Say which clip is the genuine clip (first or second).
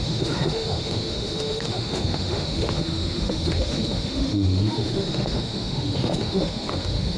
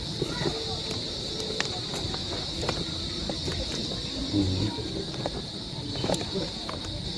second